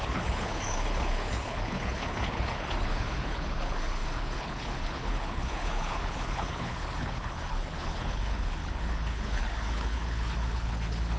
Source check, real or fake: fake